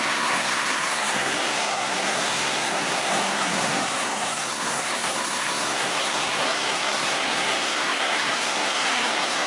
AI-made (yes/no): yes